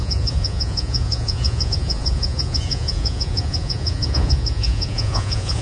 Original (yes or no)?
no